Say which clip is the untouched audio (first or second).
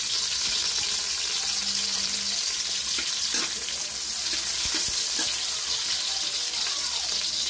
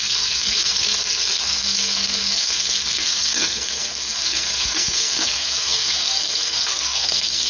first